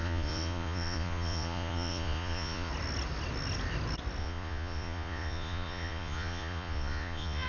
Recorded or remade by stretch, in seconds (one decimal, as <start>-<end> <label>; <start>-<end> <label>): 0.0-2.7 remade; 2.7-4.2 recorded; 4.2-7.5 remade